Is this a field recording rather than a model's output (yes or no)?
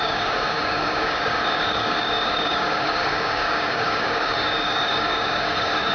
no